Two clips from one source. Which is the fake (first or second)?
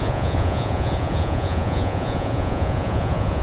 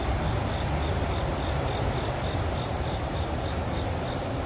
first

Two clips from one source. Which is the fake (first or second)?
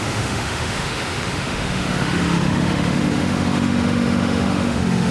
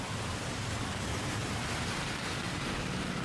first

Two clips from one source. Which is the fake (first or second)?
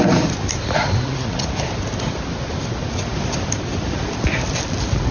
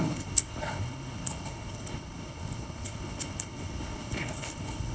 second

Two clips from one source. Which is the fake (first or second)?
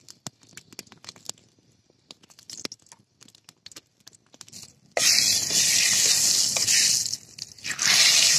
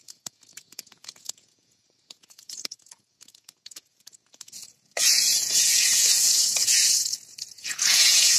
second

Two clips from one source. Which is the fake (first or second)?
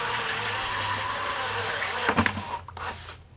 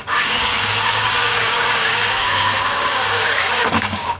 second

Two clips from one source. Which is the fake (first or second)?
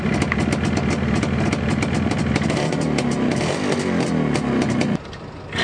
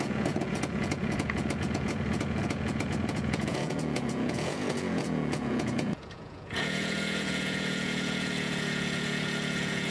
second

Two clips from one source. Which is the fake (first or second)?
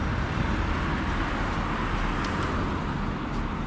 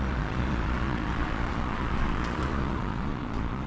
second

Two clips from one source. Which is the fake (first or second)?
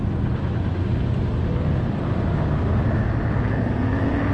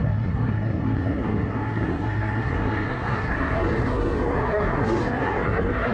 second